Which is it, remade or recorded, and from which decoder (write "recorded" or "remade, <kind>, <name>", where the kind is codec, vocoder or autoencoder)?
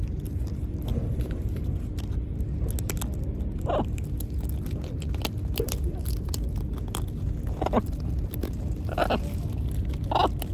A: recorded